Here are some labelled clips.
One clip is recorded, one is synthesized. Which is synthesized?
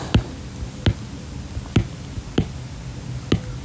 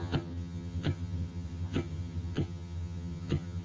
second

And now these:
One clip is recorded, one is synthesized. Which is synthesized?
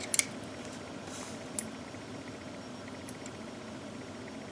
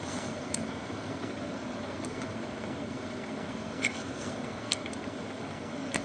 second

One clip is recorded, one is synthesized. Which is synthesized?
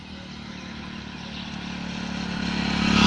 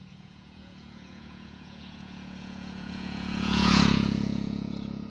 second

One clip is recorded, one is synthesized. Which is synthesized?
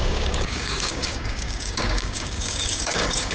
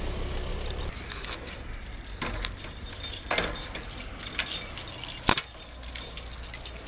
first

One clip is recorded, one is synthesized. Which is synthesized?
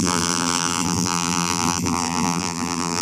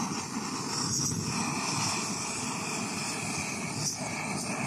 first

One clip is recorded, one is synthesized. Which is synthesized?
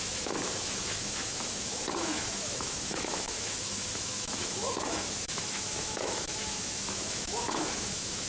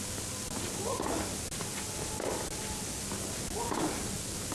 first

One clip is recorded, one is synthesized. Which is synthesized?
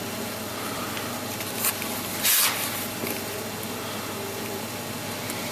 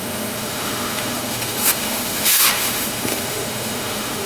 second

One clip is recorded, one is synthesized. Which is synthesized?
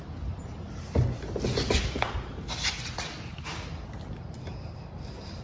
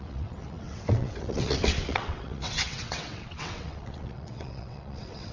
second